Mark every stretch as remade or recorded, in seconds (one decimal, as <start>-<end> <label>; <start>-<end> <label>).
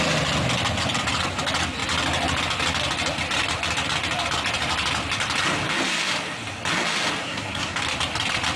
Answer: 0.0-7.2 recorded; 7.2-7.8 remade; 7.8-8.6 recorded